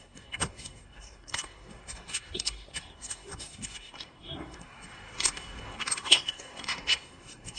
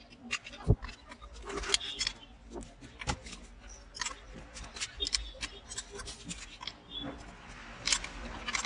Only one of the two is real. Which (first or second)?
second